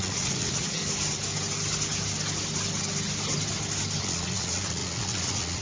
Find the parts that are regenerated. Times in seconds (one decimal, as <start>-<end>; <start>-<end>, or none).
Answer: 0.0-0.8; 4.0-5.6

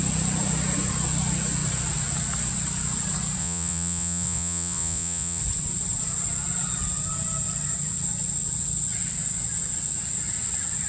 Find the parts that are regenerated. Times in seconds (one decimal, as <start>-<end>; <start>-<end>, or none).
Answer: 3.4-5.4